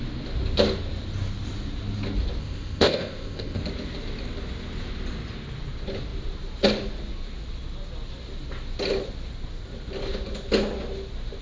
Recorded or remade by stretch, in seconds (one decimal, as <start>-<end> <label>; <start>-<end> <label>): 0.0-2.4 recorded; 2.4-3.6 remade; 3.6-11.4 recorded